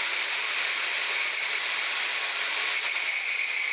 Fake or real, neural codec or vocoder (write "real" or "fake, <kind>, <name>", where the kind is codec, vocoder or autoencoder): real